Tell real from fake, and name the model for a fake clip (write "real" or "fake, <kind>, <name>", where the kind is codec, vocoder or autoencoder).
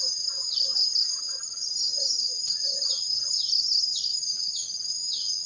fake, vocoder, HiFi-GAN